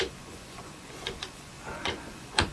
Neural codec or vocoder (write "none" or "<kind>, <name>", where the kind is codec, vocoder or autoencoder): vocoder, Vocos